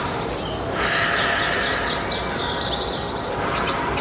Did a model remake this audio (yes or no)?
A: no